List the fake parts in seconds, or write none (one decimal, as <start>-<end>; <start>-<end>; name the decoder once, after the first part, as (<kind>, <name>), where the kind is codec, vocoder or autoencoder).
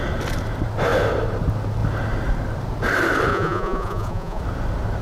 3.3-4.4 (vocoder, Vocos)